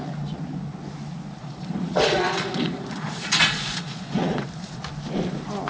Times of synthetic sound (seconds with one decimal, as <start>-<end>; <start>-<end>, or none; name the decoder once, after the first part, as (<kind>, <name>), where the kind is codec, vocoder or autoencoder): 1.4-4.8 (vocoder, Vocos)